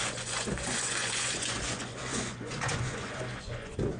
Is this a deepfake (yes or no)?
yes